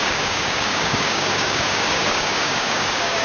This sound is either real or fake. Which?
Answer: fake